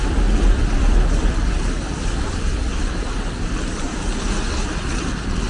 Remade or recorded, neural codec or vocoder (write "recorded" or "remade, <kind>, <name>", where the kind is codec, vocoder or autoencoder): recorded